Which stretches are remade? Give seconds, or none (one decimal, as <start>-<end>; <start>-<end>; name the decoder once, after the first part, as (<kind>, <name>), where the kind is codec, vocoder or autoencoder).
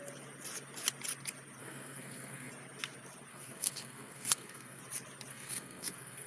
1.6-2.5 (codec, SNAC); 3.3-4.8; 5.3-6.3